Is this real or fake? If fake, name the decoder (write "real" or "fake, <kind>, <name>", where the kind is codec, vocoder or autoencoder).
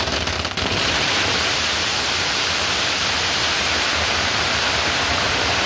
real